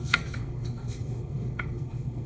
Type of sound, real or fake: fake